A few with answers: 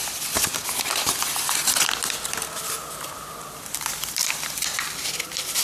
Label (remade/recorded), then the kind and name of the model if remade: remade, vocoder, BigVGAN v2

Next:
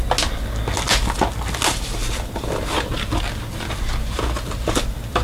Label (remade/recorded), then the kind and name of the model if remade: recorded